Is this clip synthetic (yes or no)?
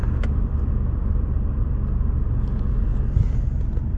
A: no